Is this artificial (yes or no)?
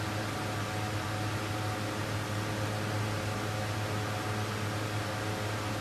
no